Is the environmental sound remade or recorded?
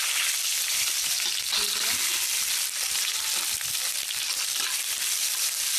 recorded